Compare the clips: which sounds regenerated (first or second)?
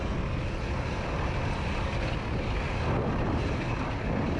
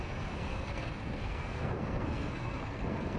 second